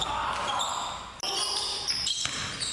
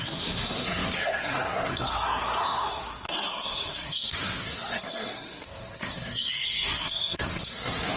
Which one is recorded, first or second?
first